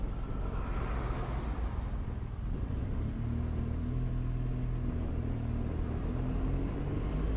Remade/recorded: recorded